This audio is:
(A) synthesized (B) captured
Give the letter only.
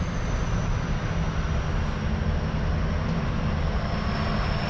B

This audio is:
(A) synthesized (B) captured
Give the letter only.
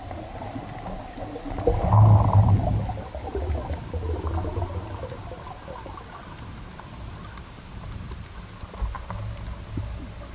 B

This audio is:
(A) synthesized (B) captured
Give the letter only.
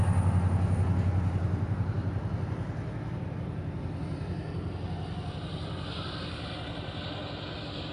B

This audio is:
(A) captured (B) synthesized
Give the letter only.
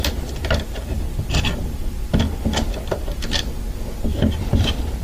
A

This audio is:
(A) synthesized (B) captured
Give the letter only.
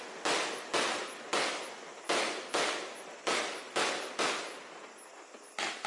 B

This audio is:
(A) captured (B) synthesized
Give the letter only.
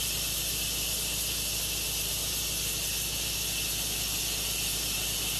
A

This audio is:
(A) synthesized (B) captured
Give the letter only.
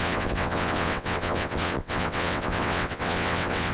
A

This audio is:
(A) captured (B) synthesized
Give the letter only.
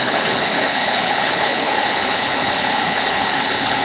B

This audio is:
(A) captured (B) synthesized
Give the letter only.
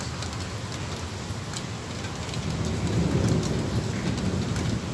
A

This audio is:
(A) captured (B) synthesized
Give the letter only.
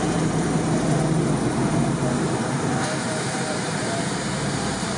B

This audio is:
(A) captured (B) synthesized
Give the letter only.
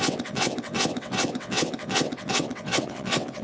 B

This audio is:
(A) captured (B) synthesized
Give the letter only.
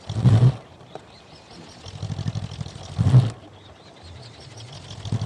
A